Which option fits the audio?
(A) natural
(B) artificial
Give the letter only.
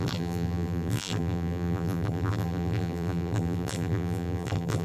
B